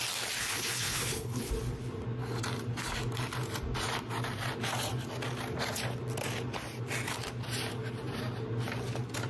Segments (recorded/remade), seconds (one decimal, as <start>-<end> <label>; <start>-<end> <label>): 0.0-0.4 recorded; 0.4-1.5 remade; 1.5-9.3 recorded